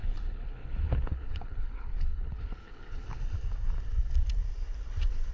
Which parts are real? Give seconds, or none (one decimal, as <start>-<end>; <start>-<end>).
3.2-5.3